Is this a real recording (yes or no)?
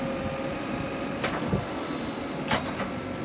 yes